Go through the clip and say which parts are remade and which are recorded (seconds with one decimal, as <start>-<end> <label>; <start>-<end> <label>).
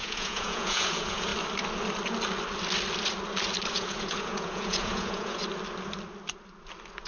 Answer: 0.0-1.3 remade; 1.3-3.7 recorded; 3.7-5.4 remade; 5.4-7.1 recorded